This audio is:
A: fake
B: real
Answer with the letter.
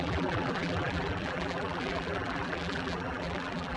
A